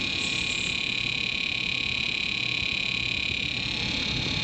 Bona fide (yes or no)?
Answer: yes